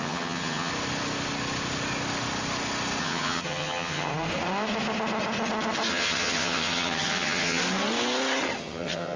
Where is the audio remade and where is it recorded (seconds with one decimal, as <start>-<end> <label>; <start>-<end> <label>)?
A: 0.0-0.7 remade; 0.7-3.0 recorded; 3.0-4.1 remade; 4.1-5.9 recorded; 5.9-7.6 remade; 7.6-8.6 recorded; 8.6-9.2 remade